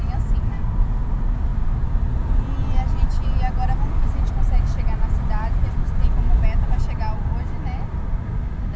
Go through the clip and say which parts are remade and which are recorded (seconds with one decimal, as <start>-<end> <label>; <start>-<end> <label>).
0.0-8.8 recorded